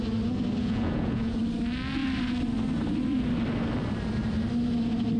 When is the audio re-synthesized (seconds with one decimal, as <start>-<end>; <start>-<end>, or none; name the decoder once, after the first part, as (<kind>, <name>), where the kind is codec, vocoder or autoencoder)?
0.6-1.4 (vocoder, Vocos)